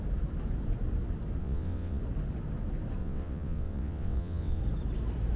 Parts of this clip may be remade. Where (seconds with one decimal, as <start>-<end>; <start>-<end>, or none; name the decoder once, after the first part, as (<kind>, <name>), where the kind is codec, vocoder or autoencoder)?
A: 1.4-2.0 (vocoder, WaveNeXt); 3.0-4.6